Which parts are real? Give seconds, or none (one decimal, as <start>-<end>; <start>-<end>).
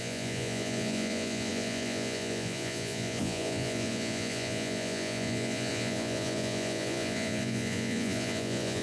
none